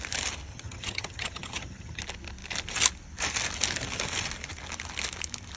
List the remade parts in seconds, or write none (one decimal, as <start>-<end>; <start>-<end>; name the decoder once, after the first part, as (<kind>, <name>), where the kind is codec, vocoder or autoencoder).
0.5-2.0 (vocoder, HiFi-GAN)